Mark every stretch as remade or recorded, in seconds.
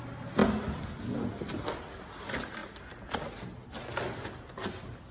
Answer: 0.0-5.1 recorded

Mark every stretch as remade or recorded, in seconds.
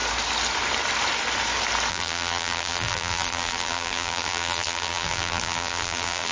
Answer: 0.0-1.9 recorded; 1.9-6.3 remade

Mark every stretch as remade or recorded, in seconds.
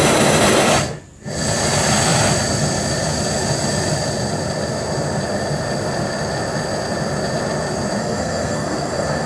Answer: 0.0-8.0 recorded; 8.0-9.3 remade